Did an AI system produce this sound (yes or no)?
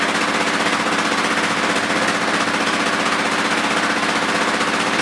no